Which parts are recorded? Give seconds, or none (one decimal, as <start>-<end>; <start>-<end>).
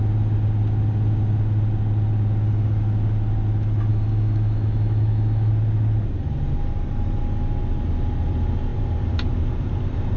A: 0.0-3.9; 5.5-10.2